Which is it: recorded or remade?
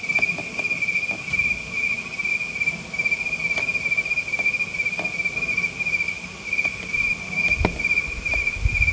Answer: recorded